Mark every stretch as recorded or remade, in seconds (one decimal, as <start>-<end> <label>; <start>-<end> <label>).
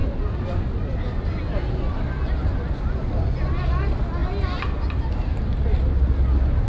0.0-6.7 recorded